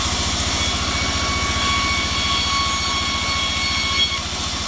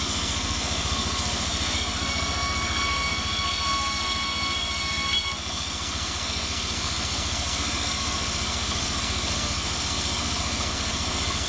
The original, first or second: first